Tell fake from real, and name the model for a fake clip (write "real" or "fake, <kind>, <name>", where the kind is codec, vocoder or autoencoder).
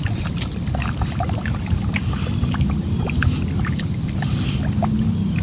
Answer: real